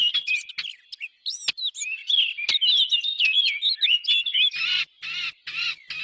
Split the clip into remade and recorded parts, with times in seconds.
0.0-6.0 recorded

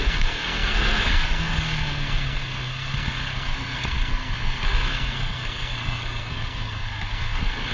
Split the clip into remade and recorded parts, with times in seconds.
0.0-7.7 remade

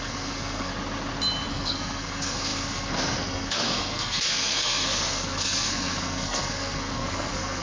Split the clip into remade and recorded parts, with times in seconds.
0.0-0.7 remade; 0.7-1.5 recorded; 1.5-7.6 remade